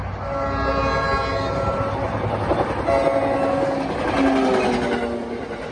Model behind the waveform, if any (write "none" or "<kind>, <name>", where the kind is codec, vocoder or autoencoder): none